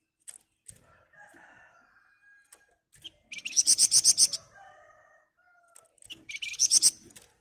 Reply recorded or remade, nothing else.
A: recorded